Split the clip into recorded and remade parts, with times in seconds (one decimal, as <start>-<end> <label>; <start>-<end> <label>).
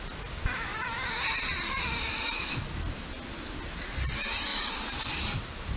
0.0-4.5 recorded; 4.5-5.8 remade